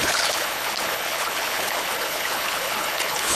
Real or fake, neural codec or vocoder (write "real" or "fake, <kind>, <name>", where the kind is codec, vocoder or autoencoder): fake, codec, HILCodec